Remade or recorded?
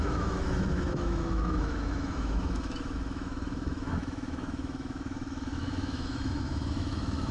remade